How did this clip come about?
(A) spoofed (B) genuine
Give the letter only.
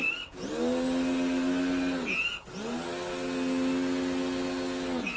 B